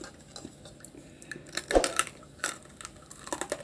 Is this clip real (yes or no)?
yes